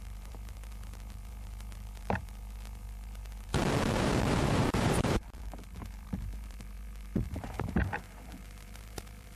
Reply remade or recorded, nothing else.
remade